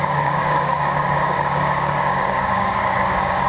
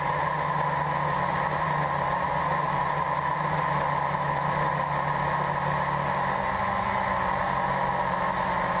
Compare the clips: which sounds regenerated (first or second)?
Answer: first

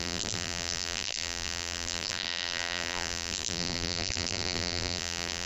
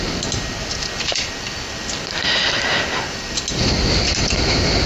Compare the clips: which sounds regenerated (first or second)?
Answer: first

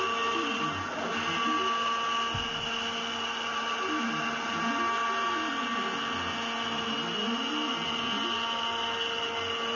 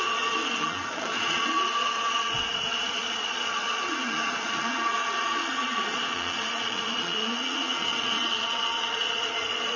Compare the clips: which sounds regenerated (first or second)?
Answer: second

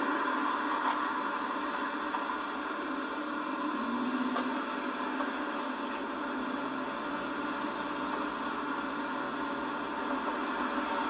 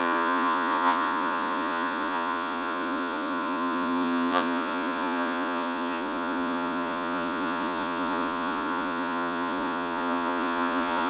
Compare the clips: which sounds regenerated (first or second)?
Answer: second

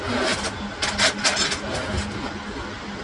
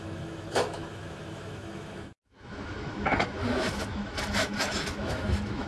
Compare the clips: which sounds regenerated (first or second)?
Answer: second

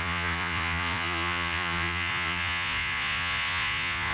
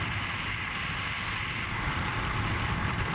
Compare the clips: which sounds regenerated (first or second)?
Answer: first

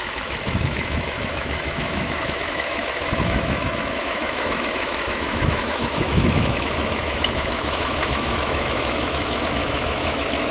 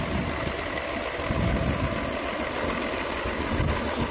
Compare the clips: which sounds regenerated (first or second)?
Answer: first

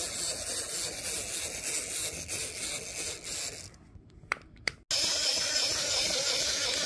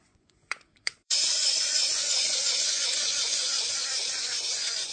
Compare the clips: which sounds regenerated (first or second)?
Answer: second